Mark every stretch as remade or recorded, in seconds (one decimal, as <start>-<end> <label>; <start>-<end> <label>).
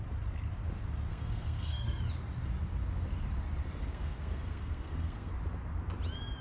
0.0-1.1 recorded; 1.1-2.0 remade; 2.0-3.8 recorded; 3.8-5.3 remade; 5.3-6.4 recorded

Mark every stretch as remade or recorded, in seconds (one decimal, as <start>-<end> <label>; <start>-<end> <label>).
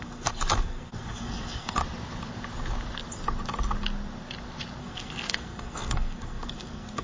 0.0-1.8 remade; 1.8-4.8 recorded; 4.8-7.0 remade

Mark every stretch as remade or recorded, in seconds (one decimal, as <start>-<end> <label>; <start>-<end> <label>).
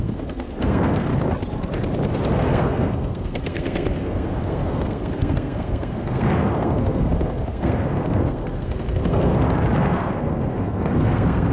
0.0-1.1 remade; 1.1-2.3 recorded; 2.3-9.3 remade; 9.3-9.8 recorded; 9.8-11.5 remade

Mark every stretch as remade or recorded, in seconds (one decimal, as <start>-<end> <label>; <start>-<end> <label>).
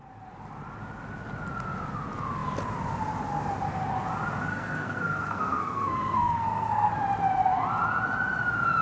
0.0-4.5 recorded; 4.5-6.9 remade; 6.9-8.8 recorded